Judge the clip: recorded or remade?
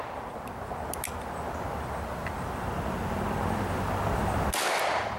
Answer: recorded